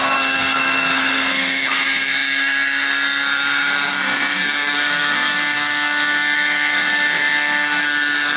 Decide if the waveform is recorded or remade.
remade